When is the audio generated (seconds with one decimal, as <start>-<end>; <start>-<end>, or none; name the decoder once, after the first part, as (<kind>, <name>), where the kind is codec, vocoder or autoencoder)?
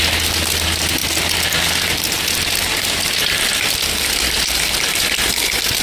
none